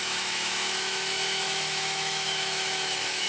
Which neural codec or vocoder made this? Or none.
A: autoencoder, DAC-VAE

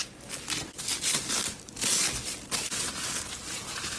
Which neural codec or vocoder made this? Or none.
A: none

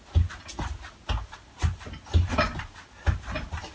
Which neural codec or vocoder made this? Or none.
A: none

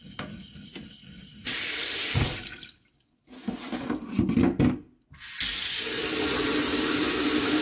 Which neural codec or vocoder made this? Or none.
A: none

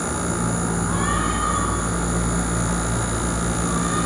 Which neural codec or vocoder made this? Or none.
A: none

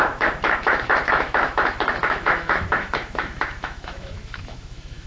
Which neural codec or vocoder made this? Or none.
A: autoencoder, DAC-VAE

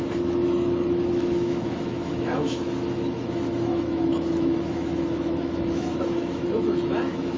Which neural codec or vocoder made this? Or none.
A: autoencoder, DAC-VAE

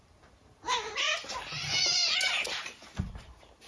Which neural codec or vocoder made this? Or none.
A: none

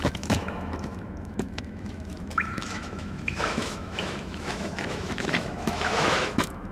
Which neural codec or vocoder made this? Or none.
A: autoencoder, DAC-VAE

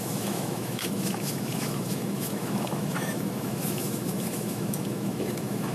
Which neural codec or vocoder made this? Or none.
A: autoencoder, DAC-VAE